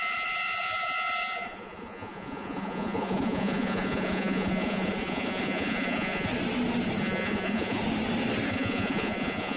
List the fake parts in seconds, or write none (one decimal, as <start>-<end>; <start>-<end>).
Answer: 0.0-6.3; 7.0-7.8; 8.5-9.6